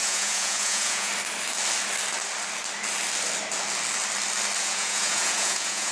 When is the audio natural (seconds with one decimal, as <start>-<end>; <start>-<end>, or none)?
1.1-4.6